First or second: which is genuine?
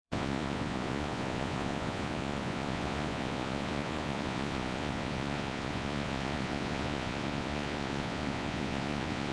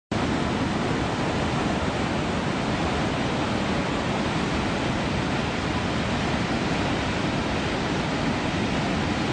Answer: second